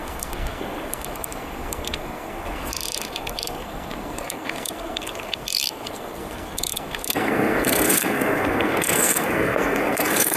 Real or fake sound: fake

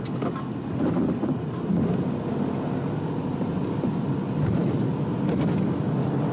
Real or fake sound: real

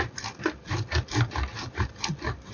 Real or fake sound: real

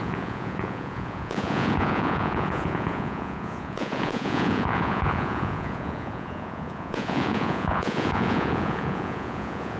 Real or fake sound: fake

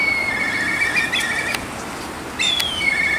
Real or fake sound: real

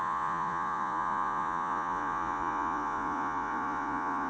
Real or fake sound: fake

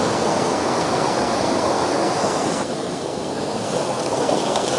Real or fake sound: fake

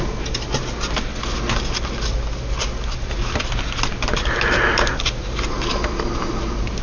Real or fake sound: real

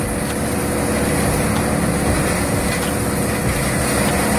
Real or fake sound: real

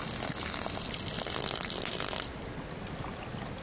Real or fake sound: real